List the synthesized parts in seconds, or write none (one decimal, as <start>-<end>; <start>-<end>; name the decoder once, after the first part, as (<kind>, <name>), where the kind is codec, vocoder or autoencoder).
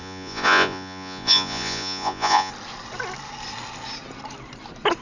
0.0-2.5 (vocoder, Vocos)